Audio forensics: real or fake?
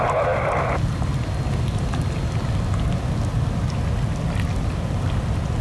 real